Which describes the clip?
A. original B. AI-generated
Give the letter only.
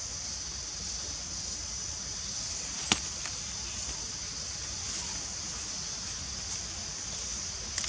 A